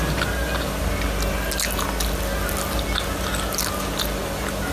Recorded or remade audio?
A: recorded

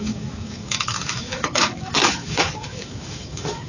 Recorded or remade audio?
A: remade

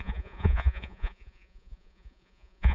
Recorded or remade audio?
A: remade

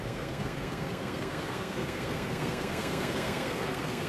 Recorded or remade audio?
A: remade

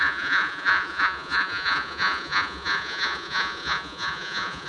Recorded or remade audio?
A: remade